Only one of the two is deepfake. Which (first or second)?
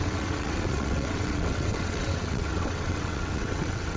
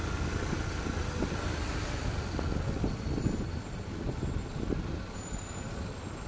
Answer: first